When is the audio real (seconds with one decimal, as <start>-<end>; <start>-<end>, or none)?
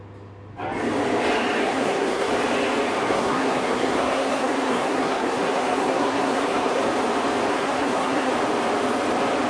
0.0-1.6; 2.3-3.1; 6.8-7.5; 8.3-9.5